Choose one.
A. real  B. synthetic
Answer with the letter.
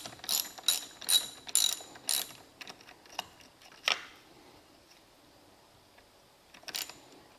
A